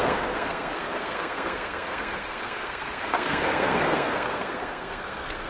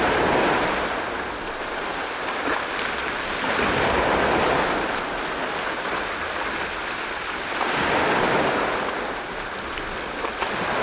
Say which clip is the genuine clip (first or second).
second